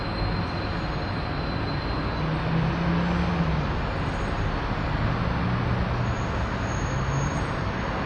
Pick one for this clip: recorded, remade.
recorded